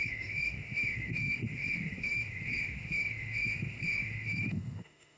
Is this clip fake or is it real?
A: fake